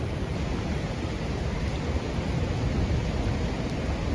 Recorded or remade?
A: recorded